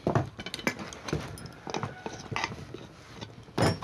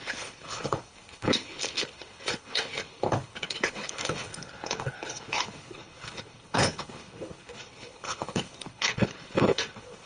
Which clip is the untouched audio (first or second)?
first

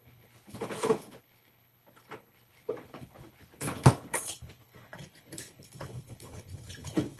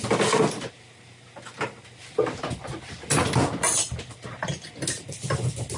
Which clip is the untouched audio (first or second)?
second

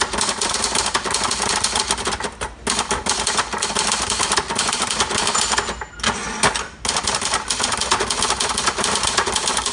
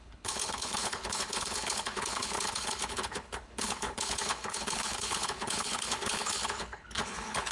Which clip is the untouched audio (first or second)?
first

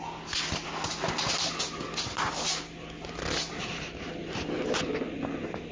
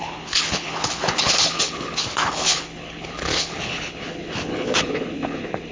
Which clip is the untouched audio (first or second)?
first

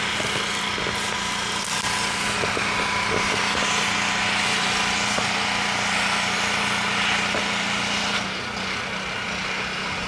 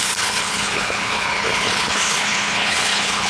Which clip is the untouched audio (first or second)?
first